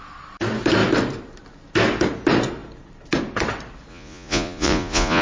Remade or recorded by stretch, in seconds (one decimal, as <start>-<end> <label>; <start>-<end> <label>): 0.0-3.9 recorded; 3.9-5.2 remade